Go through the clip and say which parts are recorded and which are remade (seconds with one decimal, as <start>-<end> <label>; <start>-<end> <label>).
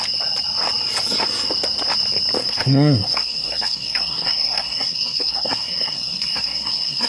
0.0-2.4 recorded; 2.4-7.1 remade